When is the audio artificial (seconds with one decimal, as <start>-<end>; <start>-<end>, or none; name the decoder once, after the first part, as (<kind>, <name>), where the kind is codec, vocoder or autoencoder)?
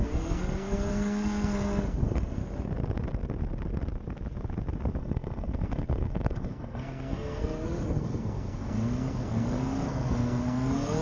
0.0-2.4 (codec, SNAC); 5.0-11.0